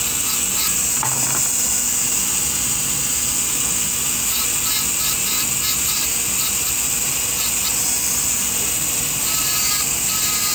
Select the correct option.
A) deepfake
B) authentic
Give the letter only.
B